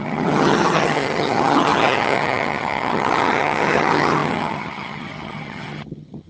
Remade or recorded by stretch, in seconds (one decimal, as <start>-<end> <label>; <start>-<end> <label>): 0.0-6.3 remade